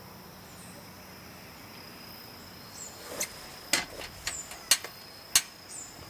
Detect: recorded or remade recorded